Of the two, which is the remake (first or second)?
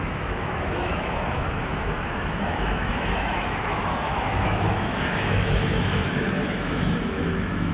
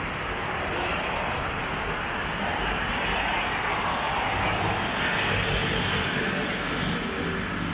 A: first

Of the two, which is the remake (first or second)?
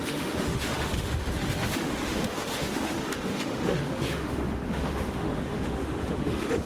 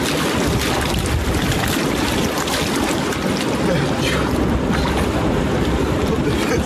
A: first